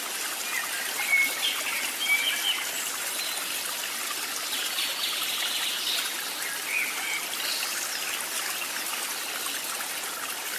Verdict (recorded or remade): recorded